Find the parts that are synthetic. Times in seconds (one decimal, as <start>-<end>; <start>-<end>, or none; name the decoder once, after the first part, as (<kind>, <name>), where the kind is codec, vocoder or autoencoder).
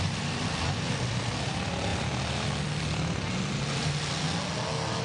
0.0-1.9 (vocoder, BigVGAN v2)